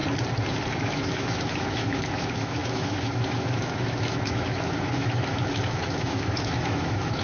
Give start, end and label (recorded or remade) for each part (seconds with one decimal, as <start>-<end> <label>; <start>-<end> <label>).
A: 0.0-0.7 recorded; 0.7-7.2 remade